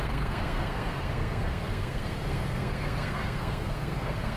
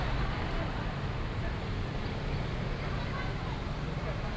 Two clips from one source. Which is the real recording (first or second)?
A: second